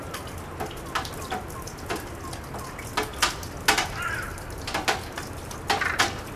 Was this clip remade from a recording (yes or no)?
no